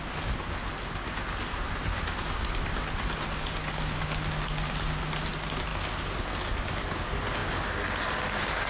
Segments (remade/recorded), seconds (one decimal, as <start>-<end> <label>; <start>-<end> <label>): 0.0-8.7 recorded